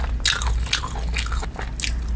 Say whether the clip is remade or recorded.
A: recorded